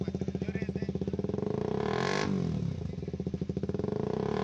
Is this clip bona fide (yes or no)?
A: yes